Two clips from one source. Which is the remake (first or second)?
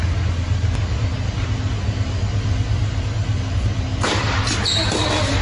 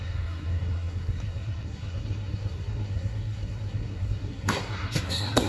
second